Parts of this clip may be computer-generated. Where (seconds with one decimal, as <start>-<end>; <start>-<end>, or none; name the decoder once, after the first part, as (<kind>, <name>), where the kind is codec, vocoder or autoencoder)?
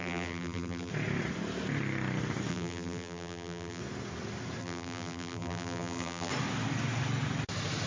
0.0-0.9 (vocoder, BigVGAN v2); 2.5-3.8; 4.6-6.3